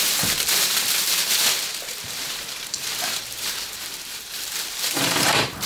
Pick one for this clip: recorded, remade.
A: remade